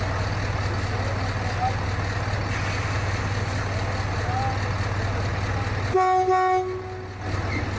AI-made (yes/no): no